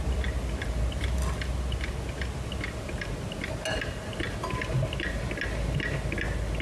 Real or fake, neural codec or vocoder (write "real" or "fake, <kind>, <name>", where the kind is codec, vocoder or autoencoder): real